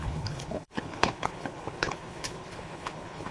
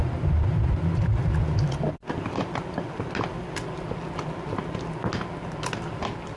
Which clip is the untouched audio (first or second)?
second